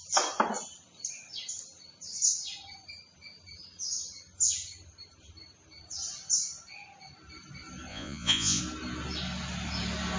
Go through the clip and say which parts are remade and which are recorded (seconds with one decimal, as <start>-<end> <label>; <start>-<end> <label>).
0.0-7.9 recorded; 7.9-8.6 remade; 8.6-10.2 recorded